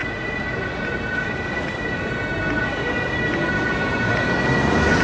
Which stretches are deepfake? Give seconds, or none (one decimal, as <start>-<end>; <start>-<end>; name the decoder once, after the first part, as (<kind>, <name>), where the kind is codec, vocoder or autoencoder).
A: none